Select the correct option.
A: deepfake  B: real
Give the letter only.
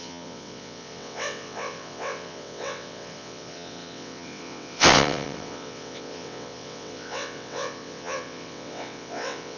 A